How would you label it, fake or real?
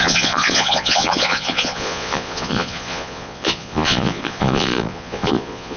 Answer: fake